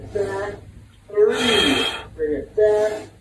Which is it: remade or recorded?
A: recorded